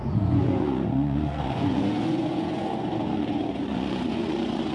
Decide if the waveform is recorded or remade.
remade